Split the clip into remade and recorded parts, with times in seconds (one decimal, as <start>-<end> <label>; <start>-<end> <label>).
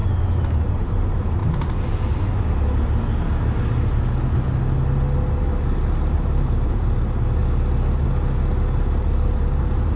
0.0-0.7 recorded; 0.7-1.4 remade; 1.4-6.1 recorded; 6.1-7.4 remade; 7.4-9.0 recorded; 9.0-10.0 remade